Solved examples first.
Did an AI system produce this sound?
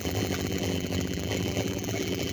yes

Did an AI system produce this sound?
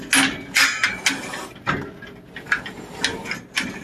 no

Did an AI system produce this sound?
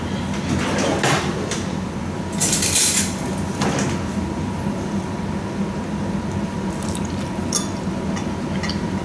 yes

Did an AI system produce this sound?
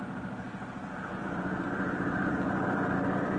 yes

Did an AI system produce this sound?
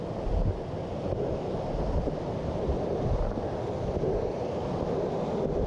no